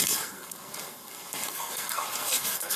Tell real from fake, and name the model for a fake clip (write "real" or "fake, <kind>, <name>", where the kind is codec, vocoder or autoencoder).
fake, codec, SNAC